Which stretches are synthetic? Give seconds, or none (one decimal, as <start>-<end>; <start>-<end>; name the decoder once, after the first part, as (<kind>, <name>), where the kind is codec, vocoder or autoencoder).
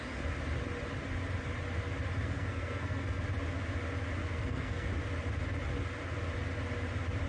2.2-3.2 (codec, SNAC); 4.2-4.9